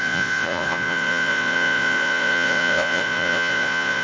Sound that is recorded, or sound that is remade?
remade